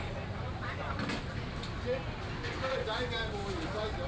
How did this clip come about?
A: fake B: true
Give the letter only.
B